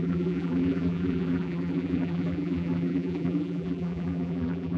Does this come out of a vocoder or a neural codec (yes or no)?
yes